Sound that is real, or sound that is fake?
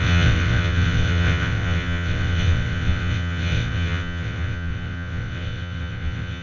fake